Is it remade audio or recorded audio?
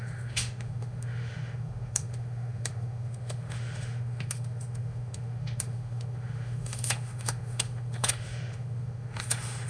remade